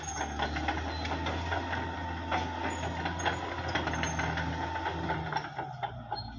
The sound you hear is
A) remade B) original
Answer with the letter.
B